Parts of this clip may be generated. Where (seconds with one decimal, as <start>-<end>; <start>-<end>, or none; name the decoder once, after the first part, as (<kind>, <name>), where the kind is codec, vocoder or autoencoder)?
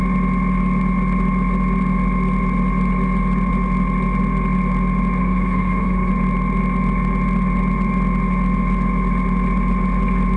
5.2-6.1 (autoencoder, DAC-VAE)